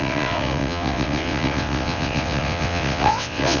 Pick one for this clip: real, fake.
fake